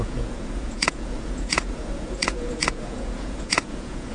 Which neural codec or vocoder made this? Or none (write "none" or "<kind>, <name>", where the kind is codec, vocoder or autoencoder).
vocoder, Vocos